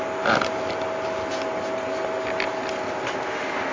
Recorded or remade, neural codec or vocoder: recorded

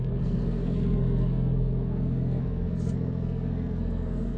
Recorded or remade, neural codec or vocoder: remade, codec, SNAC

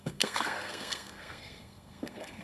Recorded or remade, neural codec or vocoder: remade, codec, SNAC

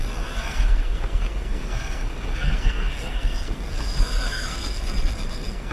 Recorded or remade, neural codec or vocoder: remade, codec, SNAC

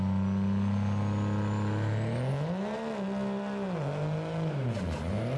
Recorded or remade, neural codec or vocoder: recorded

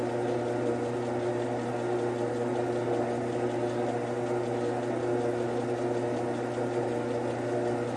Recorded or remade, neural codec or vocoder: recorded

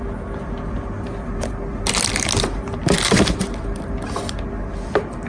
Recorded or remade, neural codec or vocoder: recorded